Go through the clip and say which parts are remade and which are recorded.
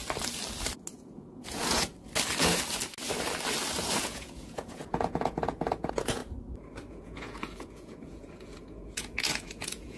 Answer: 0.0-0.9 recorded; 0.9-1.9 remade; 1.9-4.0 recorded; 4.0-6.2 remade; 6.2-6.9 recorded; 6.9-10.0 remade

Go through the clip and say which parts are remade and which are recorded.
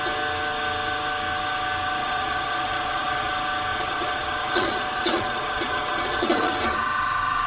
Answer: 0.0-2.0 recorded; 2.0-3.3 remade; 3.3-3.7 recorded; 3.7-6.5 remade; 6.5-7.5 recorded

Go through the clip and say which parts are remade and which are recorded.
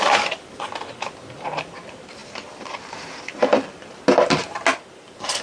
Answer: 0.0-5.4 recorded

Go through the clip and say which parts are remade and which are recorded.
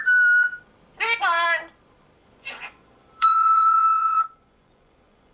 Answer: 0.0-2.2 recorded; 2.2-5.3 remade